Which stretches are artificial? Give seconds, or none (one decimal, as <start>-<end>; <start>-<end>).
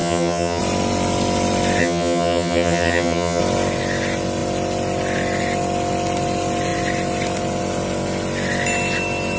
0.0-0.6; 1.8-3.4